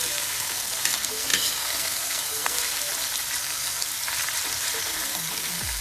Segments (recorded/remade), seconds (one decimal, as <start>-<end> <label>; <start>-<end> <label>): 0.0-2.9 remade; 2.9-3.4 recorded; 3.4-3.9 remade; 3.9-4.8 recorded; 4.8-5.8 remade

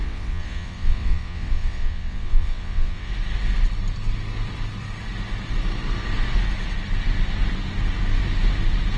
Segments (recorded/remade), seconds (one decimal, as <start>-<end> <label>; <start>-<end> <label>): 0.0-3.1 remade; 3.1-9.0 recorded

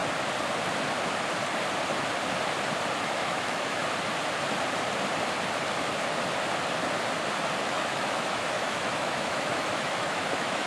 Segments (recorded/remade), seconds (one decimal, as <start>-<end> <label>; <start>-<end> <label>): 0.0-3.0 recorded; 3.0-3.8 remade; 3.8-7.7 recorded; 7.7-10.7 remade

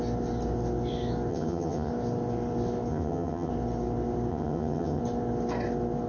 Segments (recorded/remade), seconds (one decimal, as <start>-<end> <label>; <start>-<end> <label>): 0.0-1.3 recorded; 1.3-1.9 remade; 1.9-2.9 recorded; 2.9-3.5 remade; 3.5-4.3 recorded; 4.3-5.0 remade; 5.0-6.1 recorded